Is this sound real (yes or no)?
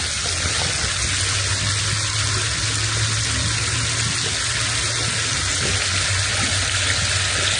yes